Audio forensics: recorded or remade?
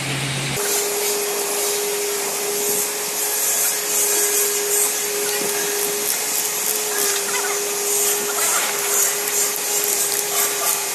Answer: recorded